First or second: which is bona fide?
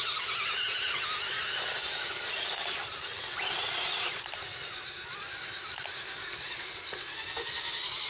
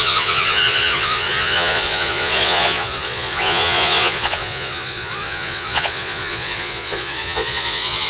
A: first